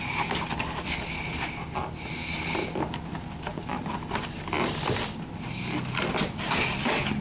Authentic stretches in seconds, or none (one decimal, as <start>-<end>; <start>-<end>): 0.0-3.5; 4.2-7.2